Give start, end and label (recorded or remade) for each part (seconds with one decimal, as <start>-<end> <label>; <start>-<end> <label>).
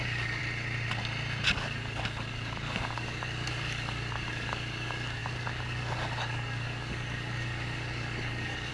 0.0-0.4 remade; 0.4-1.5 recorded; 1.5-8.7 remade